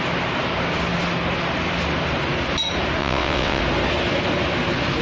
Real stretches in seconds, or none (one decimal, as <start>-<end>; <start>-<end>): 0.0-3.0; 3.6-5.0